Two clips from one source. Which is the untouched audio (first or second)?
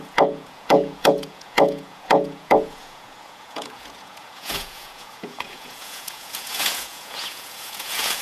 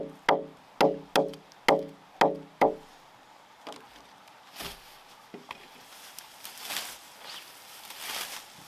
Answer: second